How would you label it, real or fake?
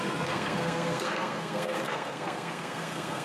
fake